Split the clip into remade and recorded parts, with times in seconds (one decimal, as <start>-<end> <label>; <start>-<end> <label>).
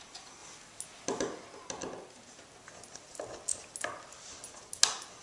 0.0-5.2 recorded